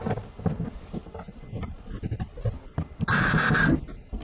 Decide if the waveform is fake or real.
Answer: real